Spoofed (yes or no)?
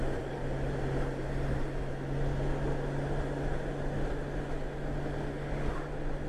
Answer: no